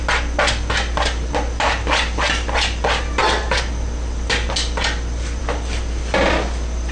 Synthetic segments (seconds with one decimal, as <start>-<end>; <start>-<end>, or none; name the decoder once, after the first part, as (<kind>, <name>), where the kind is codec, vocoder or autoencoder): none